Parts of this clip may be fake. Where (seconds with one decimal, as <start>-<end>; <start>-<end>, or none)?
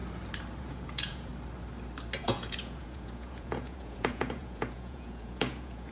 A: 0.6-1.3; 2.2-5.9